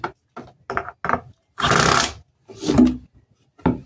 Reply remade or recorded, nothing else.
recorded